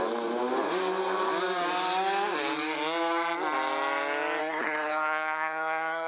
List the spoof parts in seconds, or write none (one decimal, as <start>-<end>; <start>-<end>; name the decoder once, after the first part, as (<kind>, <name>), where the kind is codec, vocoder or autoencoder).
4.4-6.1 (codec, SNAC)